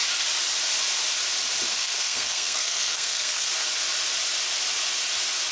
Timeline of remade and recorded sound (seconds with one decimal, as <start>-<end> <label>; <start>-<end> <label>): 0.0-1.7 recorded; 1.7-3.5 remade; 3.5-5.5 recorded